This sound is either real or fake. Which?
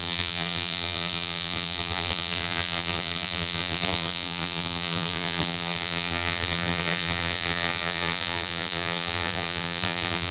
fake